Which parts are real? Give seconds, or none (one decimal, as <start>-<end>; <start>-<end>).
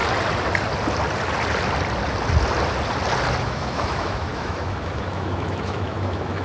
0.0-3.4